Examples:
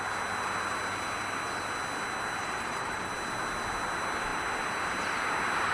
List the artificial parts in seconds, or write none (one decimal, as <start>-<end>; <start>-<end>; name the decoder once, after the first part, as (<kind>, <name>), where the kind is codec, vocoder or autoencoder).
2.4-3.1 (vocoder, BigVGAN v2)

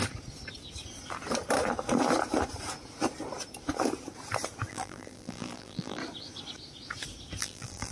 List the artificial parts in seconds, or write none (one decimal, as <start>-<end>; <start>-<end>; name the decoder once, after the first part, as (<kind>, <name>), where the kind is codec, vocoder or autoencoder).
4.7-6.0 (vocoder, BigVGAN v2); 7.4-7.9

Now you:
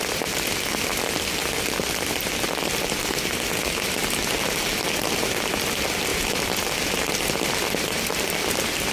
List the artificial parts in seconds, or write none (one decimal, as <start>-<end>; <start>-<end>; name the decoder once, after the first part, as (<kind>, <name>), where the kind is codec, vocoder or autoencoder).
none

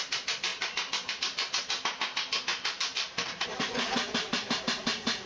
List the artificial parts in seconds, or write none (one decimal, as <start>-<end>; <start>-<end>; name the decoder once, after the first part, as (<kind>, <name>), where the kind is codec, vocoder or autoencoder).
2.5-4.6 (vocoder, BigVGAN v2)